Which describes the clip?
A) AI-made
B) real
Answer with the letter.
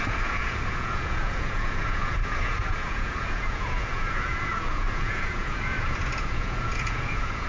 A